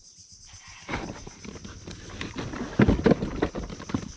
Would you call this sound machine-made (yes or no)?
no